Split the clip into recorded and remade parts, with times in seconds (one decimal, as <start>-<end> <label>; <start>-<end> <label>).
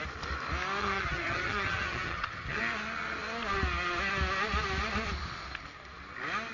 0.0-0.8 recorded; 0.8-2.6 remade; 2.6-6.5 recorded